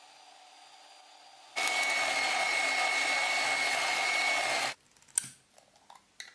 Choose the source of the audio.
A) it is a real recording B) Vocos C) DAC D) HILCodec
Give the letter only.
A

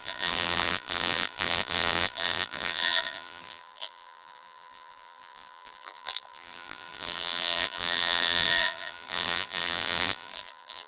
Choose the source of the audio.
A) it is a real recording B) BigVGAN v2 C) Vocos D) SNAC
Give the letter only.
B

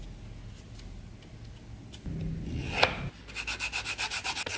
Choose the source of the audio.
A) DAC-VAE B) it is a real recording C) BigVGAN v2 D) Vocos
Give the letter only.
B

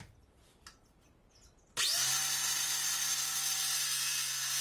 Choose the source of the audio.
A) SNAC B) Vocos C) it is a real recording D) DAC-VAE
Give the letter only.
C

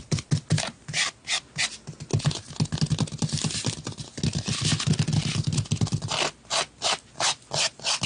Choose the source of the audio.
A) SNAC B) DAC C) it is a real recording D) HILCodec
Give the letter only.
C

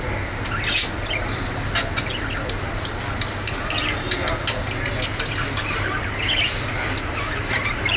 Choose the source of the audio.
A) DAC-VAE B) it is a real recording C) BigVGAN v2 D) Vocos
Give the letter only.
B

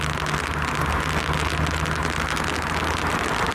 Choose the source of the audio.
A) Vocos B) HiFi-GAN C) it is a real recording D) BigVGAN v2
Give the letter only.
C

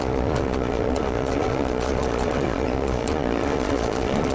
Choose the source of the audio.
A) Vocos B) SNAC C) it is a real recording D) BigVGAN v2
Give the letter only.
A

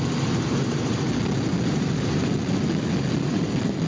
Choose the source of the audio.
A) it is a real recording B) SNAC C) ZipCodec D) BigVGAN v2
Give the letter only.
A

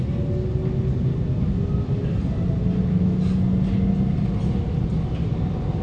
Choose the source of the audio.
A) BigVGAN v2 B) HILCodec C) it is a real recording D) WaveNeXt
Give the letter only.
C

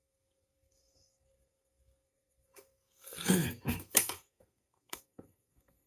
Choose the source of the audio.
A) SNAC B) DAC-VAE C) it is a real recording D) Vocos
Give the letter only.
A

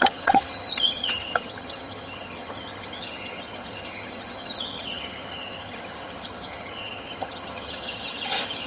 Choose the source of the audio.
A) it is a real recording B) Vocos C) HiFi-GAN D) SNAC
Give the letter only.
C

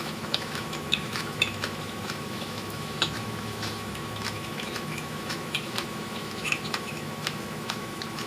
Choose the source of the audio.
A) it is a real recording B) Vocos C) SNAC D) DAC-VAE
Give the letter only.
D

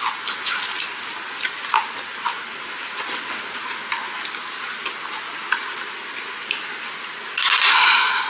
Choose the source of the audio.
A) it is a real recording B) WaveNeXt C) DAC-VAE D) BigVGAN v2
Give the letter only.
A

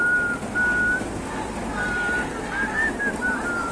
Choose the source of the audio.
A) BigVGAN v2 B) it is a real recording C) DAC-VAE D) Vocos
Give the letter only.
B